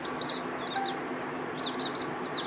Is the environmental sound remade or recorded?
recorded